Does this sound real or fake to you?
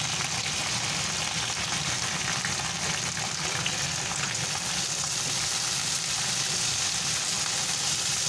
real